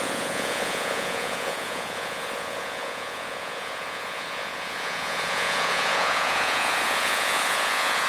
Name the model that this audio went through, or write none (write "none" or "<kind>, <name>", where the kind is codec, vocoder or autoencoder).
vocoder, Vocos